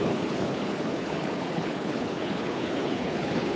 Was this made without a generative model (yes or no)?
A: no